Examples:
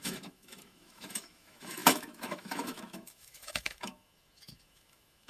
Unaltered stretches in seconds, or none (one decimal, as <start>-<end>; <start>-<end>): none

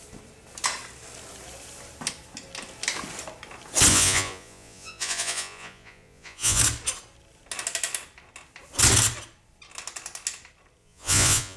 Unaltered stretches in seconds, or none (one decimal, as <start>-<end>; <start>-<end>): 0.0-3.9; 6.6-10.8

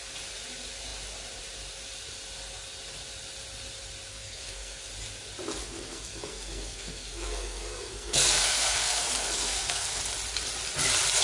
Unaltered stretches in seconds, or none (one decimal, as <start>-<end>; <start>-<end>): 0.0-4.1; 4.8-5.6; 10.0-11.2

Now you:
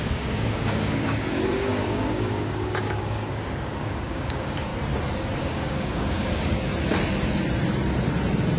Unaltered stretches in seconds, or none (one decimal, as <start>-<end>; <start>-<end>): 4.7-5.4; 6.7-8.6